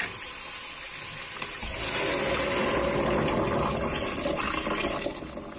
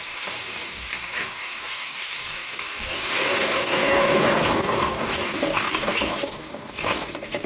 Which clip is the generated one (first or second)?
second